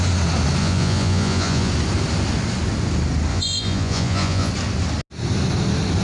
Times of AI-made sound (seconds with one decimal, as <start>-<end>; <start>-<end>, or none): 0.6-1.7; 3.3-4.5